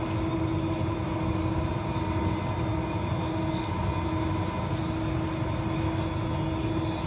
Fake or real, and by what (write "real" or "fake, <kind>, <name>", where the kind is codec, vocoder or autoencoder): real